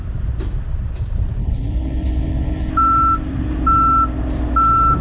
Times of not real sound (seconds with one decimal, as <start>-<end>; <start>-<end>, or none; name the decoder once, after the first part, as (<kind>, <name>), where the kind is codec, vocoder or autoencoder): 1.4-2.7 (codec, HILCodec)

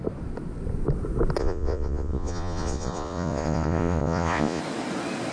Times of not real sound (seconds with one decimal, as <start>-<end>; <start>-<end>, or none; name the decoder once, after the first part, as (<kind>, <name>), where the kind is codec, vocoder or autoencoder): 1.4-4.6 (vocoder, Vocos)

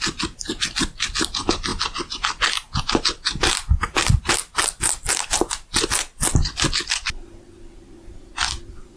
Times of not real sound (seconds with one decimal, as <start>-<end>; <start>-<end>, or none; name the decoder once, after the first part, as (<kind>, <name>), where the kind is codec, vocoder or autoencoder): none

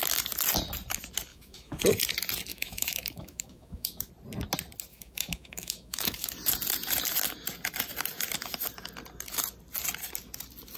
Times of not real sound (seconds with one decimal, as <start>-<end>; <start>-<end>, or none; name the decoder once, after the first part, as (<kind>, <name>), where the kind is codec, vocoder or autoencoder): 1.3-1.8 (autoencoder, DAC-VAE); 2.5-4.1; 4.9-6.3

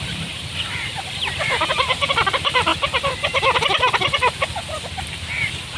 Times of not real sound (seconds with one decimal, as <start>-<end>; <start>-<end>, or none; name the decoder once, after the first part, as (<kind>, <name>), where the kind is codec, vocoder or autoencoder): 0.0-2.7 (vocoder, BigVGAN v2); 4.0-5.8

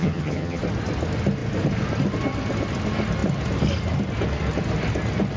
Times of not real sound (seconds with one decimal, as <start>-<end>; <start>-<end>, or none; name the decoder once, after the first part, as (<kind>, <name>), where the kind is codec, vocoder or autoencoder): 0.0-0.6 (vocoder, HiFi-GAN)

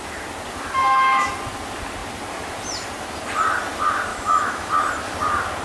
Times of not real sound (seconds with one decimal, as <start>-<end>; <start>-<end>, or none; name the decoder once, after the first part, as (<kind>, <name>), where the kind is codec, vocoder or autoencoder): 0.8-1.3 (autoencoder, DAC-VAE); 4.1-4.7